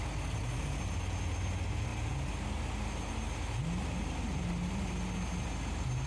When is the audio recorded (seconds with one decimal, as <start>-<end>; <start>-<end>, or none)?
0.0-6.1